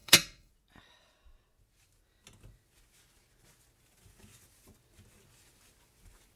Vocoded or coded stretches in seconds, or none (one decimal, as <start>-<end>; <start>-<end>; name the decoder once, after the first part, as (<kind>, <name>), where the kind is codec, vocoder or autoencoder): 0.0-0.5 (codec, SNAC)